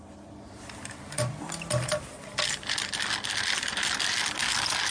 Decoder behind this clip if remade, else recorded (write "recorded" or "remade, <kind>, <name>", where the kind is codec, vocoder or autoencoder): recorded